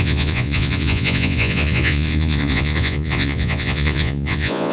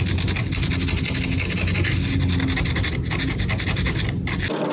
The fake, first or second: first